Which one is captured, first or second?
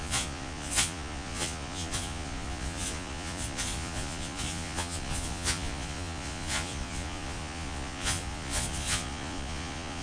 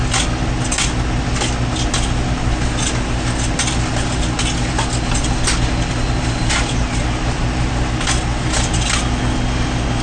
second